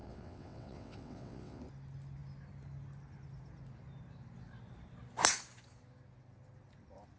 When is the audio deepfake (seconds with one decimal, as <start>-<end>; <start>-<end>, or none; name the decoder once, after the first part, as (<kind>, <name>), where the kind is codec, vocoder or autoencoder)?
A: 0.0-1.6 (vocoder, WaveNeXt)